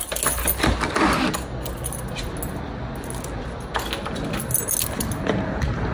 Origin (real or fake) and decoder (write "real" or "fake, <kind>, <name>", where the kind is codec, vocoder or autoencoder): real